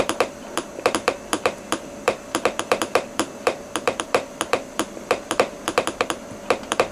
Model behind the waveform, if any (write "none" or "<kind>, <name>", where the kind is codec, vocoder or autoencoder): vocoder, BigVGAN v2